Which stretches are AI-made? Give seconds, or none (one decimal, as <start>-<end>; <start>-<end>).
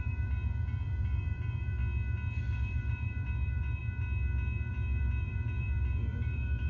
0.0-1.8; 2.4-3.8; 4.7-6.7